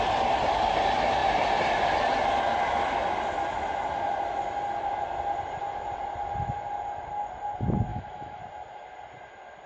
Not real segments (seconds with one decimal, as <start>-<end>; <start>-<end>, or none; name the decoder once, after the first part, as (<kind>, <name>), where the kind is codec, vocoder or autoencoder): 7.9-8.4 (autoencoder, DAC-VAE)

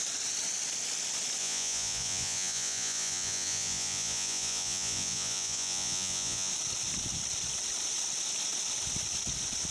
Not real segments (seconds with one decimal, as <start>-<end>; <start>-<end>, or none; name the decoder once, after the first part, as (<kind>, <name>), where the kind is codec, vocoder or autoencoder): 1.4-6.5 (vocoder, Vocos)

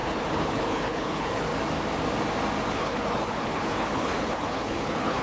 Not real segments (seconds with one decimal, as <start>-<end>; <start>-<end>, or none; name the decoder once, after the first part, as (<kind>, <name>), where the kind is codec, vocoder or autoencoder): 0.0-1.5 (codec, HILCodec); 2.7-5.2

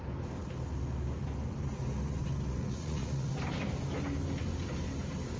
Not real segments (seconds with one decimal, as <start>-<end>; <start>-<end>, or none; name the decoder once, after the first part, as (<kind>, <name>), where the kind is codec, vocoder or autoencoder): 2.5-3.3 (vocoder, Vocos)

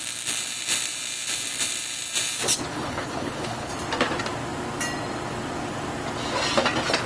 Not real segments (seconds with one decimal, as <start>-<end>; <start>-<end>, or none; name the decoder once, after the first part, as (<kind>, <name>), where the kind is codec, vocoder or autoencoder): 2.7-3.7 (codec, HILCodec)

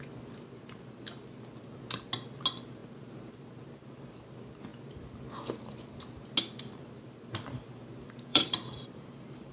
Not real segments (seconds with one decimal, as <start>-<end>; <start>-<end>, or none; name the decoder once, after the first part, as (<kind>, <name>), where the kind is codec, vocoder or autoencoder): 8.3-9.5 (vocoder, BigVGAN v2)